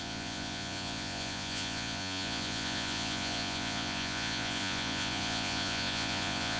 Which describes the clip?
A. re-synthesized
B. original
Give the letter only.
A